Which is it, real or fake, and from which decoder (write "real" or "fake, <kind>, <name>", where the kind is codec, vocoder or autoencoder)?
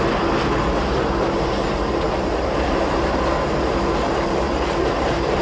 real